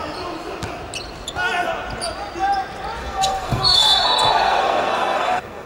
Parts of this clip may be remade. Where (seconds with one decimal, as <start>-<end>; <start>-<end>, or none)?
3.0-5.7